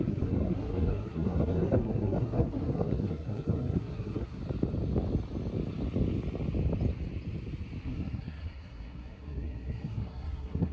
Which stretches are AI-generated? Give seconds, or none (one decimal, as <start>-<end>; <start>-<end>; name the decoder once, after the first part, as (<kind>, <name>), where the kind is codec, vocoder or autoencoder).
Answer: 0.0-4.4 (codec, SNAC); 7.8-10.7